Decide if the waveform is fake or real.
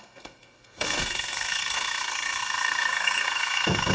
fake